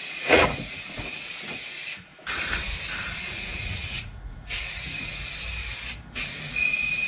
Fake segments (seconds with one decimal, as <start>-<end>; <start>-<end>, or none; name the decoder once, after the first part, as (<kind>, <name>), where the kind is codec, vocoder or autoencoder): 0.0-2.1 (vocoder, Vocos); 3.2-5.3; 6.1-7.1